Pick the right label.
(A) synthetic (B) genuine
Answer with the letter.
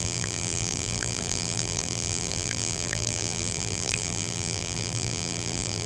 A